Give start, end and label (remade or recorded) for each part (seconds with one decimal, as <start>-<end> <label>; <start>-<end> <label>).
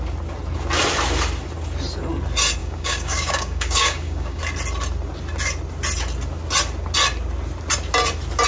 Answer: 0.0-2.6 recorded; 2.6-4.4 remade; 4.4-8.5 recorded